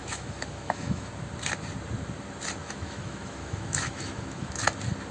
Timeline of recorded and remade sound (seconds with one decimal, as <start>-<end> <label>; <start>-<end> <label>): 0.0-1.1 remade; 1.1-2.6 recorded; 2.6-4.5 remade; 4.5-5.1 recorded